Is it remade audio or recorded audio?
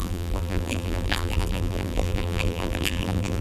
remade